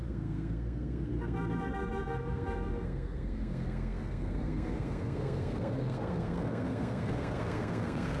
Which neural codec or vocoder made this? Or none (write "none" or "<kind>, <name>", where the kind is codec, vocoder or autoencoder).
codec, SNAC